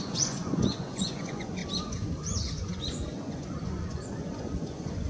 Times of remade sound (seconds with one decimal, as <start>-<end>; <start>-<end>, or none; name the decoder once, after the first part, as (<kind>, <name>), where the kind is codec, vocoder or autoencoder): 0.0-5.1 (vocoder, Vocos)